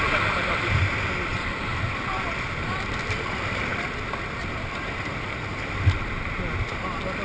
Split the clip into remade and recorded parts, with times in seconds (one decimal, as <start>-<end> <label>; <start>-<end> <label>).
0.0-1.3 recorded; 1.3-3.3 remade; 3.3-7.2 recorded

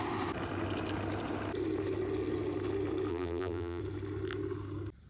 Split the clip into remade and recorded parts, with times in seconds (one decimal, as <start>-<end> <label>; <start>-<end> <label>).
0.0-3.1 recorded; 3.1-3.8 remade; 3.8-5.1 recorded

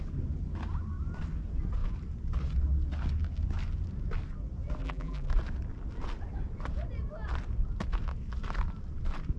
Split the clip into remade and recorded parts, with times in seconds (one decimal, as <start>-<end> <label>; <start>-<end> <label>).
0.0-4.8 recorded; 4.8-5.3 remade; 5.3-9.4 recorded

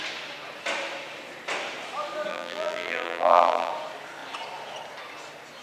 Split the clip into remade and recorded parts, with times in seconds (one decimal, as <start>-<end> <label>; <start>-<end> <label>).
0.0-2.3 recorded; 2.3-3.7 remade; 3.7-5.6 recorded

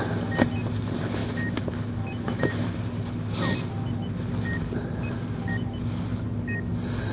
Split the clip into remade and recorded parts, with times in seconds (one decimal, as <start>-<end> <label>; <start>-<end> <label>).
0.0-7.1 recorded

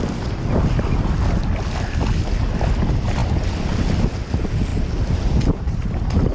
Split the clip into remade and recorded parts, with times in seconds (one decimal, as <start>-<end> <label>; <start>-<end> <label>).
0.0-6.3 recorded

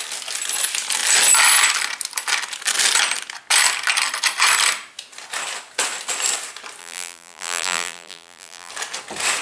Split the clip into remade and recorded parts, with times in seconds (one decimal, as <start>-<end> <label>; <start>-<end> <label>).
0.0-6.8 recorded; 6.8-8.7 remade; 8.7-9.4 recorded